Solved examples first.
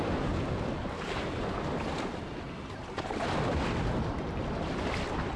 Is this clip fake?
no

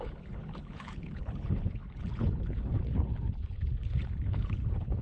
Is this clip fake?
yes